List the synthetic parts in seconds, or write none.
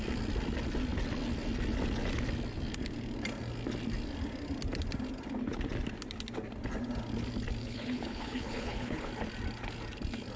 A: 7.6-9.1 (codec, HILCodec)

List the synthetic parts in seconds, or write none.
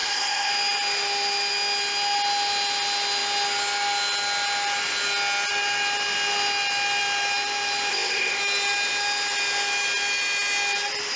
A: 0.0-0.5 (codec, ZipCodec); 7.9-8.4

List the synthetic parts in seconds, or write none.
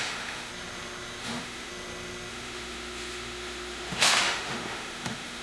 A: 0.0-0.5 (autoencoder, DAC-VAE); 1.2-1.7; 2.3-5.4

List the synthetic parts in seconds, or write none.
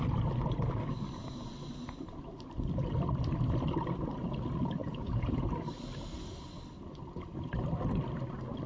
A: 4.8-5.4 (vocoder, Vocos)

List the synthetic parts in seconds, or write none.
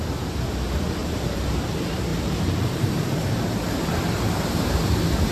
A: 1.0-1.5 (vocoder, BigVGAN v2); 2.1-4.5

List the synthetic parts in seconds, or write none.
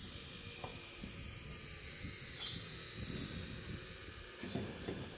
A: none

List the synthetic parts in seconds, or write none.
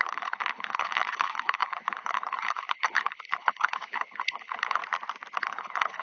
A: 0.0-4.8 (codec, HILCodec); 5.4-6.0